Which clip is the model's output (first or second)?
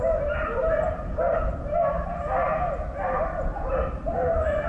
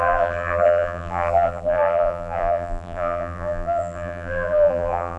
second